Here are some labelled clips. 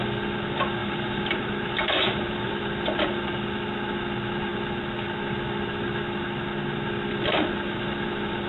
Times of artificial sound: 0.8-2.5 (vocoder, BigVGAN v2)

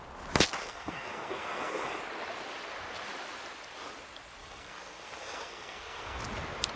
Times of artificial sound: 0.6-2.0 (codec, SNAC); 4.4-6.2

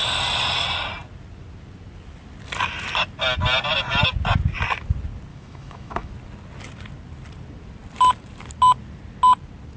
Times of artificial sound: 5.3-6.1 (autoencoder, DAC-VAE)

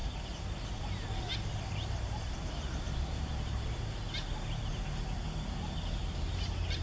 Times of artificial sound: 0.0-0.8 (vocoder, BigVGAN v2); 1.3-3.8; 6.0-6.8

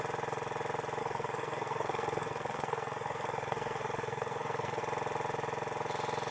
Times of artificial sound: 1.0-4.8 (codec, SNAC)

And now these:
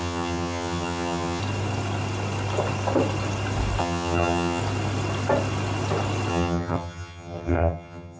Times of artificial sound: 0.0-1.4 (vocoder, HiFi-GAN); 3.8-4.6; 6.3-8.2

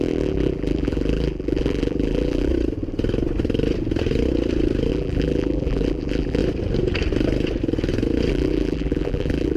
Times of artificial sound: 0.0-2.5 (vocoder, BigVGAN v2); 4.9-6.4; 8.3-9.6